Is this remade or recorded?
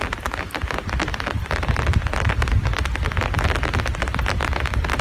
recorded